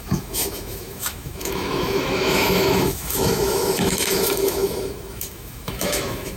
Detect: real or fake fake